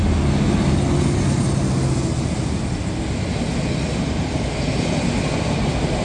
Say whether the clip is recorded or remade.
recorded